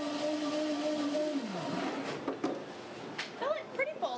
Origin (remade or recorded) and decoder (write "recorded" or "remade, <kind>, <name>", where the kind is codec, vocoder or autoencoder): recorded